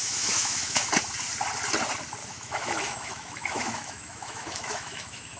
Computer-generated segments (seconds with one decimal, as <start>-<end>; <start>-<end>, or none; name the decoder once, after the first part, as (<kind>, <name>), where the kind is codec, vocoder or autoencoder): 0.0-0.9 (autoencoder, DAC-VAE); 2.2-5.4